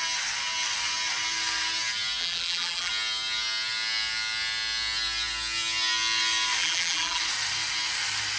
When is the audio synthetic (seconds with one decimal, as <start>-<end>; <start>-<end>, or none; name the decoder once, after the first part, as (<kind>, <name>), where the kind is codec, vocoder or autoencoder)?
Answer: 2.2-2.9 (vocoder, BigVGAN v2); 6.6-7.2